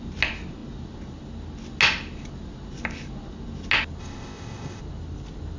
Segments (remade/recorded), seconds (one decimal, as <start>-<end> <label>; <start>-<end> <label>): 0.0-4.0 recorded; 4.0-4.8 remade; 4.8-5.6 recorded